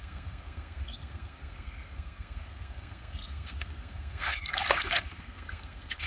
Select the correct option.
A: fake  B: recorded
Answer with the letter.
A